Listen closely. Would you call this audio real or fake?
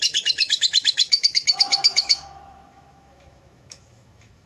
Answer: fake